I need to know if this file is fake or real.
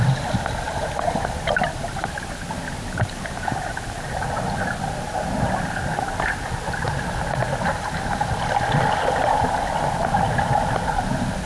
real